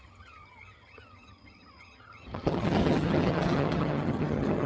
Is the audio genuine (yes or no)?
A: no